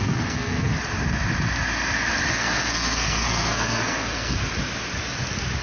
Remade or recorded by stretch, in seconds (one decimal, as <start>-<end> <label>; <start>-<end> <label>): 0.0-0.7 remade; 0.7-2.3 recorded; 2.3-4.4 remade; 4.4-5.6 recorded